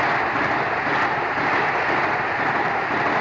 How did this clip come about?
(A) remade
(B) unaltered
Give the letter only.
B